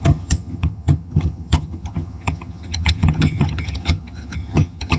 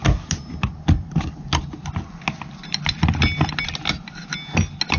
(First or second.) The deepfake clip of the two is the first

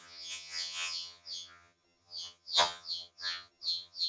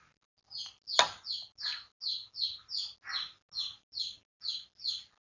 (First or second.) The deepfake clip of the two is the first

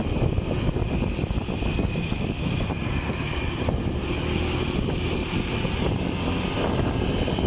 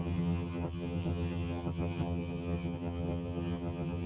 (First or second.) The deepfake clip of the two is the second